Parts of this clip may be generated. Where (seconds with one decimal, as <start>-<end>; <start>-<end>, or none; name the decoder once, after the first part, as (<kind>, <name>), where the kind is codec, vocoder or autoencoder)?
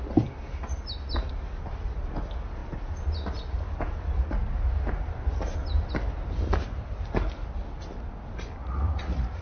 8.6-9.4 (vocoder, Vocos)